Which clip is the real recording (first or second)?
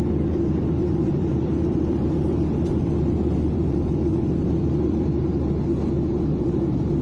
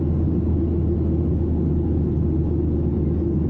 second